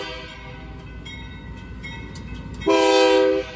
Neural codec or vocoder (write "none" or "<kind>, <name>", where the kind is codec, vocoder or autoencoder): none